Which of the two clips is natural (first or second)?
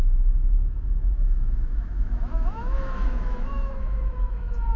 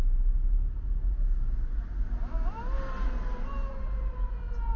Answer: second